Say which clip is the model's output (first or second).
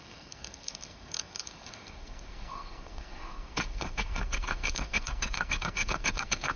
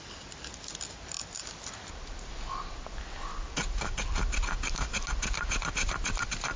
first